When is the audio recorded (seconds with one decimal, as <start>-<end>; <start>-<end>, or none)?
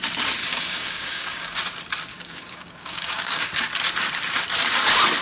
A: 0.0-0.4; 1.6-2.1; 3.5-5.2